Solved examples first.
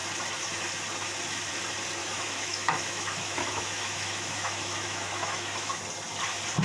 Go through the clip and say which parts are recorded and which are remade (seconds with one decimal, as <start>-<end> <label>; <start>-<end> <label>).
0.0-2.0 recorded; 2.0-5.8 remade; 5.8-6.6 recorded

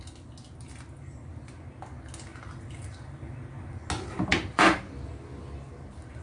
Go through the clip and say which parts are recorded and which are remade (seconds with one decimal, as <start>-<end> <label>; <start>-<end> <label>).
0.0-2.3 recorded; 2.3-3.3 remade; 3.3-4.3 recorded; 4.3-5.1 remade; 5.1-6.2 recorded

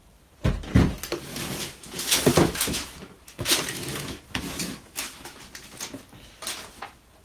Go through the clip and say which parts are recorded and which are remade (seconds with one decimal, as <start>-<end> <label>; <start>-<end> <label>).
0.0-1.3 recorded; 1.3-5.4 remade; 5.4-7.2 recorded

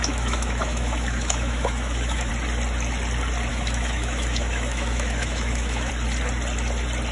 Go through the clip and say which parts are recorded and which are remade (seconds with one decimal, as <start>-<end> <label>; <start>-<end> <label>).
0.0-2.3 remade; 2.3-3.5 recorded; 3.5-5.9 remade; 5.9-7.1 recorded

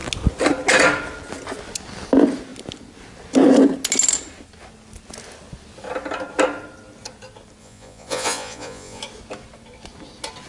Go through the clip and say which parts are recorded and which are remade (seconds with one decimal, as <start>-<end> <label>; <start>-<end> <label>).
0.0-7.6 recorded; 7.6-9.0 remade; 9.0-10.5 recorded